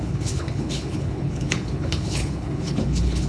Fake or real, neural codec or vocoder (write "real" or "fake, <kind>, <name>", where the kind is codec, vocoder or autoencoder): fake, codec, HILCodec